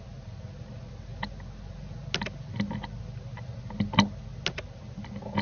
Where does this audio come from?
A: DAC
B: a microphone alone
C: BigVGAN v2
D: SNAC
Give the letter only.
B